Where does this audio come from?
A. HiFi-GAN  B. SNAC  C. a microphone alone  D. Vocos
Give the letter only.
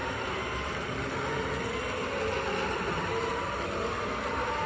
C